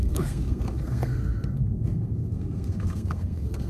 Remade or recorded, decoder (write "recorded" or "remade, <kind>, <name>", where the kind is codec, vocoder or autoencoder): remade, codec, SNAC